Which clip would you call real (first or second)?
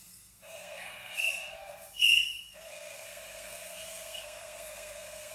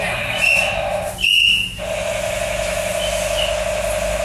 second